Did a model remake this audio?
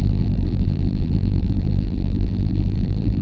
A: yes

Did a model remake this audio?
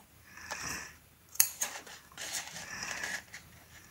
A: yes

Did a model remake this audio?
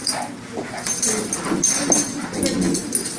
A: no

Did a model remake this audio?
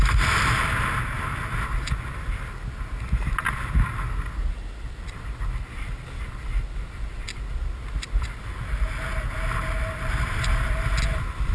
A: no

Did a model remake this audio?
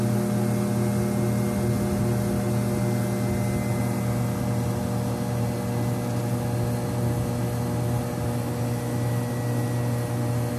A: no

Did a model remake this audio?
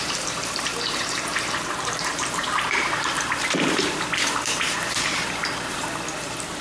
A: yes